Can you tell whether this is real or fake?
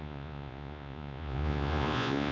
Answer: fake